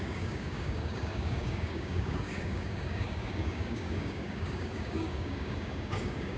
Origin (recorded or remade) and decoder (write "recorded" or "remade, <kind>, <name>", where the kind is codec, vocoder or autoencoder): remade, codec, DAC